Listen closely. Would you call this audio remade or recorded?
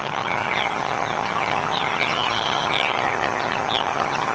remade